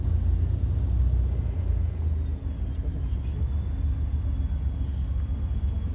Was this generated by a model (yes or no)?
no